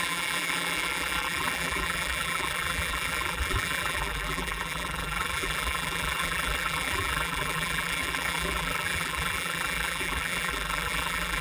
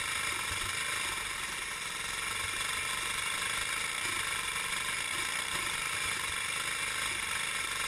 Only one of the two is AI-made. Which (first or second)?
first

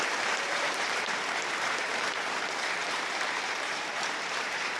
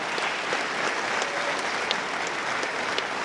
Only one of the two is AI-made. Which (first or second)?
first